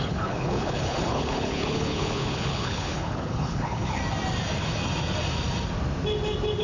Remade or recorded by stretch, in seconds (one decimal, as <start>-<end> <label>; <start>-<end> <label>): 0.0-4.0 remade; 4.0-6.6 recorded

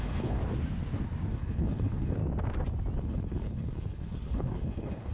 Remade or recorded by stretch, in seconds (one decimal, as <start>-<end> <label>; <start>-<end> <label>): 0.0-0.4 remade; 0.4-1.3 recorded; 1.3-2.2 remade; 2.2-3.0 recorded; 3.0-5.1 remade

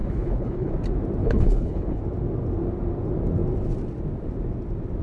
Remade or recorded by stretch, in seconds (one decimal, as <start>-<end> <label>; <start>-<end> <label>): 0.0-0.7 remade; 0.7-1.2 recorded; 1.2-2.0 remade; 2.0-5.0 recorded